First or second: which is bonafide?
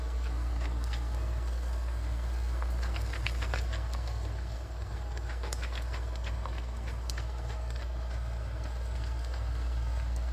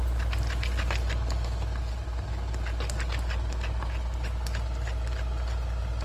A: second